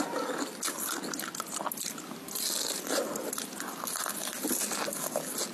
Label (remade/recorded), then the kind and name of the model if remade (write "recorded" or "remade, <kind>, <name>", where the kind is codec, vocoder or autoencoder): recorded